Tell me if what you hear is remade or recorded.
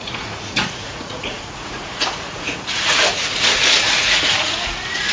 remade